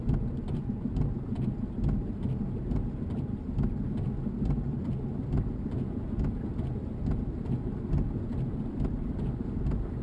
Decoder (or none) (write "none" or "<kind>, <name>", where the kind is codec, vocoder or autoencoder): none